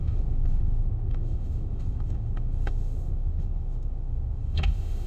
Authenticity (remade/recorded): remade